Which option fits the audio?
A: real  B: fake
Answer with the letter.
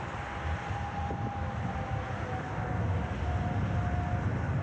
A